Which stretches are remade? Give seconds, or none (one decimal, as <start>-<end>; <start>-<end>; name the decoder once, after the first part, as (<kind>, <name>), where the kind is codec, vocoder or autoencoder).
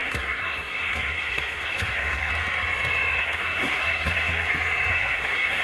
0.0-2.3 (codec, SNAC); 3.2-4.5; 4.9-5.6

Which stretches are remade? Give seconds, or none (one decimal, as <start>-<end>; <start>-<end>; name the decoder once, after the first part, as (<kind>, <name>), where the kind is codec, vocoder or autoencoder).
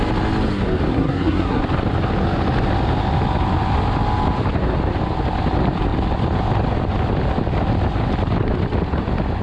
0.9-1.6 (codec, SNAC)